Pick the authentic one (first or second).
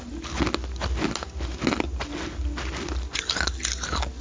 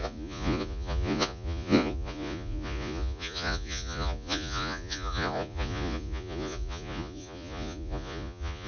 first